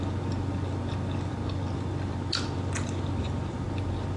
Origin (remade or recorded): recorded